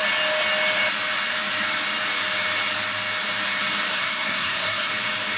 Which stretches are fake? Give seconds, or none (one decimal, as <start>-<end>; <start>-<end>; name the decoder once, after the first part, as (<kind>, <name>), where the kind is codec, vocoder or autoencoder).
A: 3.9-4.9 (codec, SNAC)